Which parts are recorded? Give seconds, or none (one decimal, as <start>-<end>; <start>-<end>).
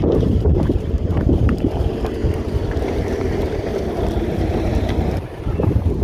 2.2-2.9; 3.7-4.2